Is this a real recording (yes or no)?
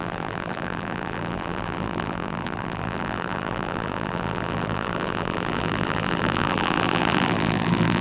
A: no